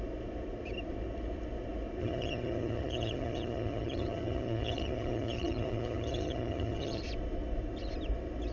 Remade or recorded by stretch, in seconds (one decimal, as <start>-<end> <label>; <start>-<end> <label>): 0.0-2.0 recorded; 2.0-7.0 remade; 7.0-8.5 recorded